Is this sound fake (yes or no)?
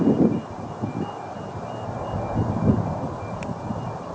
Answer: no